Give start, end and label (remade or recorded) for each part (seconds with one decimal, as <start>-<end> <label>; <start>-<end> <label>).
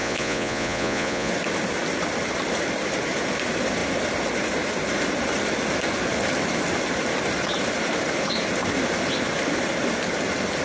0.0-1.3 remade; 1.3-10.6 recorded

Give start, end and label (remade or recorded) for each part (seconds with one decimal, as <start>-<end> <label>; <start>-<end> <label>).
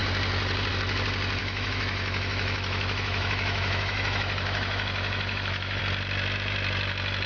0.0-1.4 recorded; 1.4-5.8 remade; 5.8-7.3 recorded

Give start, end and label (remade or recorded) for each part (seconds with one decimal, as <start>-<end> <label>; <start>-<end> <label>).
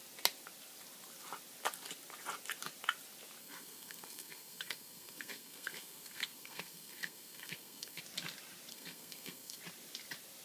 0.0-3.4 recorded; 3.4-8.0 remade; 8.0-8.7 recorded; 8.7-9.6 remade; 9.6-10.4 recorded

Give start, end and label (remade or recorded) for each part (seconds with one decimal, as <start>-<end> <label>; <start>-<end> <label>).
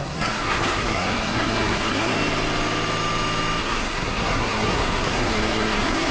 0.0-2.1 remade; 2.1-3.6 recorded; 3.6-6.1 remade